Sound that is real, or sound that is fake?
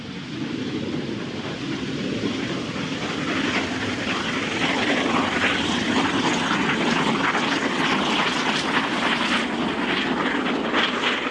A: real